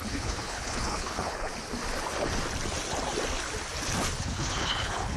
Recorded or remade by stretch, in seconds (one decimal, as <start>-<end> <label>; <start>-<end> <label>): 0.0-1.5 remade; 1.5-4.2 recorded; 4.2-5.2 remade